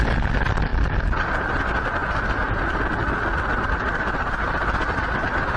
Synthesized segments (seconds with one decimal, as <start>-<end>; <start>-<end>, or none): none